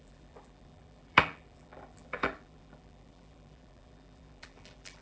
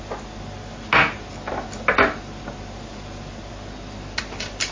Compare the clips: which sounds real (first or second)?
second